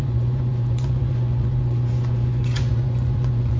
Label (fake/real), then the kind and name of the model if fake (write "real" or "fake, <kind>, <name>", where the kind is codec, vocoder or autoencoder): fake, vocoder, Vocos